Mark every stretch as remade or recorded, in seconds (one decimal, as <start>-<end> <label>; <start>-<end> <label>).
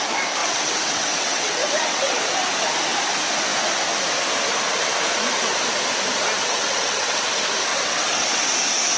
0.0-0.4 recorded; 0.4-2.3 remade; 2.3-6.4 recorded; 6.4-7.2 remade; 7.2-7.7 recorded; 7.7-8.5 remade; 8.5-9.0 recorded